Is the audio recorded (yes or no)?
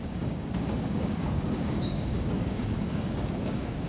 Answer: no